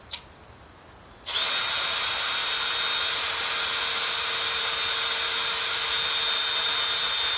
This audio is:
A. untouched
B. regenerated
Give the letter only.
A